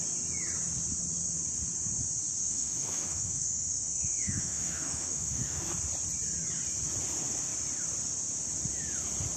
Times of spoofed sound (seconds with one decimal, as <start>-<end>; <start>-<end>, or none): 2.4-5.7